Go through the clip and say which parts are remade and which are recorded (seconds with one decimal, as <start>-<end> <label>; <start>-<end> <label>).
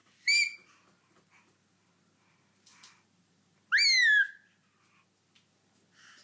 0.0-6.2 recorded